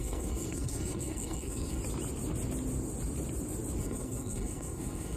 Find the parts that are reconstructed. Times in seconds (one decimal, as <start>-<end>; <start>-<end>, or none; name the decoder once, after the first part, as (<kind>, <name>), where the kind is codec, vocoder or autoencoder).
0.0-1.8 (codec, SNAC); 3.8-5.2